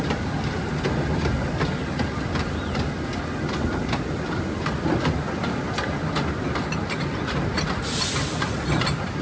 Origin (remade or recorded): recorded